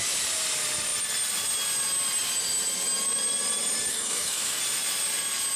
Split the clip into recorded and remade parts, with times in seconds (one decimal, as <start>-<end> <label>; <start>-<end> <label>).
0.0-3.9 recorded; 3.9-4.6 remade; 4.6-5.6 recorded